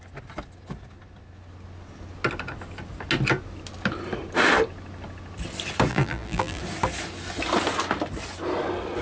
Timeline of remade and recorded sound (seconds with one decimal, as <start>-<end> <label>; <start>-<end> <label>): 0.0-5.9 recorded; 5.9-6.6 remade; 6.6-9.0 recorded